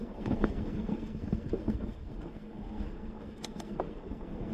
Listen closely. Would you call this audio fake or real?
fake